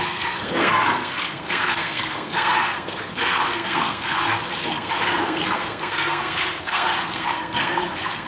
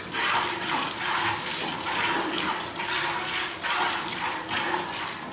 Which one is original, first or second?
second